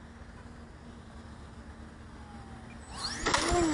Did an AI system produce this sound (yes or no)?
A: no